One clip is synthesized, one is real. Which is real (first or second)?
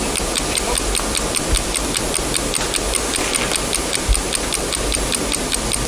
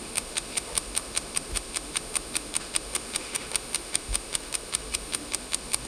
first